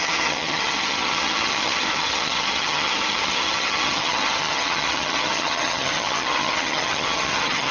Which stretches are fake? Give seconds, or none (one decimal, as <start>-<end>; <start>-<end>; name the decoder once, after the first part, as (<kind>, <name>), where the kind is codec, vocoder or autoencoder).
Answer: 0.0-7.7 (vocoder, HiFi-GAN)